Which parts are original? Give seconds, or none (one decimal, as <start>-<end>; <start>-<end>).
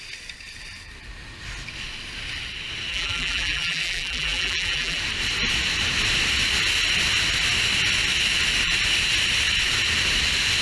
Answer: 0.0-2.9; 5.0-10.6